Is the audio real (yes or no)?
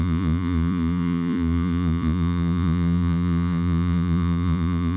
no